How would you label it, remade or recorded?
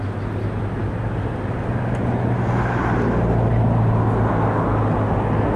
recorded